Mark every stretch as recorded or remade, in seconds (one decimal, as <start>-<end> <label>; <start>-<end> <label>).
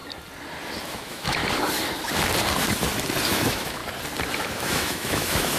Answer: 0.0-0.9 recorded; 0.9-1.4 remade; 1.4-3.3 recorded; 3.3-3.8 remade; 3.8-4.4 recorded; 4.4-5.6 remade